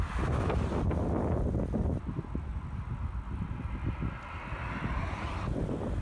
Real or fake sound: real